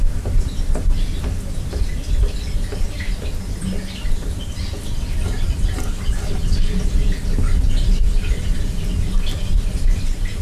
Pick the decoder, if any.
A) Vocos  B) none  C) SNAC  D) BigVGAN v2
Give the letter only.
B